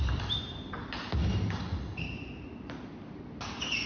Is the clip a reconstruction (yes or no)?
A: no